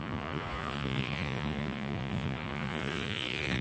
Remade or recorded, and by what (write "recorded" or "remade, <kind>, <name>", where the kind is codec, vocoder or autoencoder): remade, vocoder, Vocos